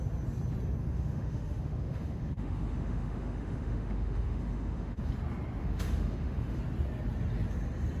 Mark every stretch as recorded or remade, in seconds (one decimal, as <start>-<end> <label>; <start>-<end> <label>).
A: 0.0-0.8 recorded; 0.8-5.1 remade; 5.1-5.6 recorded; 5.6-6.6 remade; 6.6-8.0 recorded